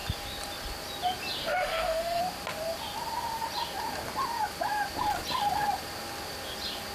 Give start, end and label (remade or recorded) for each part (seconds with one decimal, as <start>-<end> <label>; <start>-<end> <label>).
0.0-1.4 recorded; 1.4-2.2 remade; 2.2-6.9 recorded